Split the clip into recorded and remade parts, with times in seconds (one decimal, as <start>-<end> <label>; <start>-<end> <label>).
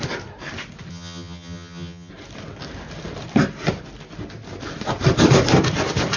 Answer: 0.0-0.9 recorded; 0.9-2.1 remade; 2.1-6.2 recorded